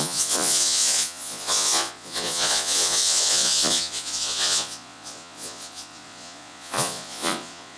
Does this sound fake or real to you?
fake